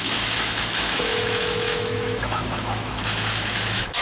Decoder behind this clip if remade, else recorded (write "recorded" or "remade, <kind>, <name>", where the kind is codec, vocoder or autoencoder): remade, autoencoder, DAC-VAE